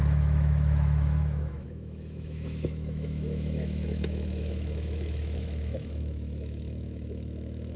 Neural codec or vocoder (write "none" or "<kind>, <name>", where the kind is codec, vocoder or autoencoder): autoencoder, DAC-VAE